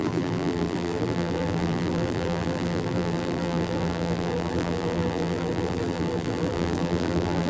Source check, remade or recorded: remade